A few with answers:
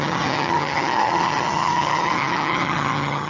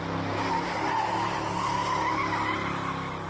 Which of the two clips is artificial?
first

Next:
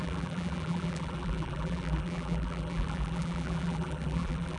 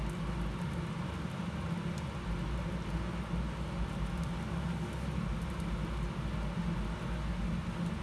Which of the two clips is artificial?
first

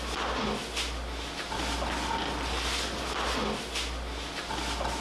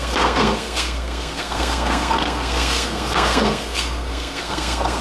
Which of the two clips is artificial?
second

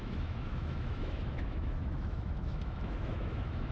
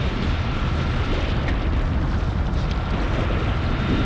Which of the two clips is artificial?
first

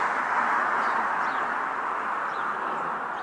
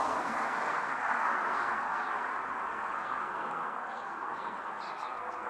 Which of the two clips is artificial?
second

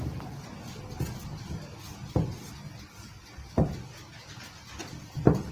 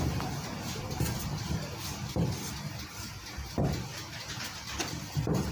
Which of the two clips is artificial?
second